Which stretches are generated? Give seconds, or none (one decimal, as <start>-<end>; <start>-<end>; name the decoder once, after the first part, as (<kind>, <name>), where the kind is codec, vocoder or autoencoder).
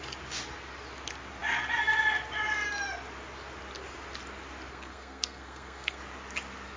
4.7-6.0 (codec, SNAC)